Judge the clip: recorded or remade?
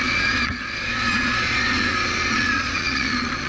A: remade